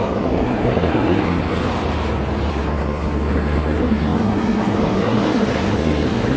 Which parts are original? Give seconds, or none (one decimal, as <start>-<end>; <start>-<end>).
1.6-2.5